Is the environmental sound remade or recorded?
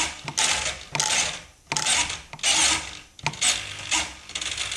recorded